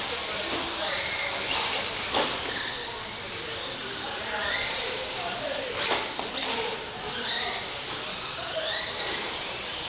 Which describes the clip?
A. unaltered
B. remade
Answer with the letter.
B